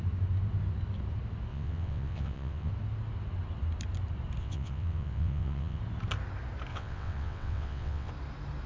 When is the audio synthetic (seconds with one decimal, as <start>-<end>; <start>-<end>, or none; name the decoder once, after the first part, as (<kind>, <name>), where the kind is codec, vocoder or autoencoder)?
1.5-2.7 (vocoder, WaveNeXt); 4.4-5.8; 6.7-8.1